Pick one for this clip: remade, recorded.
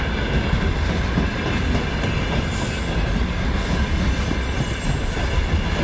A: recorded